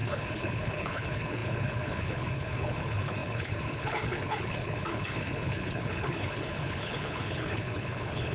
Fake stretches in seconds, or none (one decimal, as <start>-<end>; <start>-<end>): 0.0-8.3